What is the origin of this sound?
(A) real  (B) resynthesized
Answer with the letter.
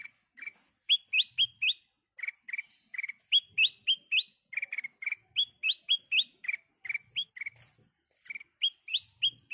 A